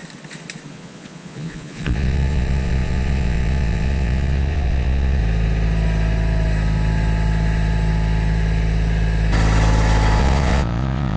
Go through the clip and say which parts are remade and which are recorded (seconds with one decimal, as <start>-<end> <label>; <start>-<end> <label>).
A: 0.0-0.7 recorded; 0.7-5.2 remade; 5.2-10.2 recorded; 10.2-11.2 remade